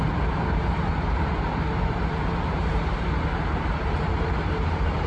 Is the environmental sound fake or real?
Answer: fake